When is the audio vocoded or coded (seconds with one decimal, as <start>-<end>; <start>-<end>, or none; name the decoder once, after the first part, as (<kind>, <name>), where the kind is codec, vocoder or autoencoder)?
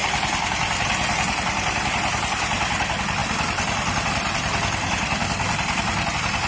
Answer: 0.0-1.9 (vocoder, BigVGAN v2); 3.2-6.1